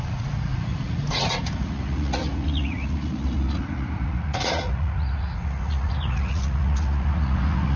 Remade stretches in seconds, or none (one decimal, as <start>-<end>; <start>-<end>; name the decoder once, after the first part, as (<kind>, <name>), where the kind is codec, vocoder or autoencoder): 0.0-7.8 (vocoder, Vocos)